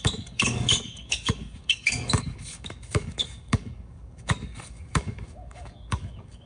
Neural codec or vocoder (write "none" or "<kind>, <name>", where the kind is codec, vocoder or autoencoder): codec, DAC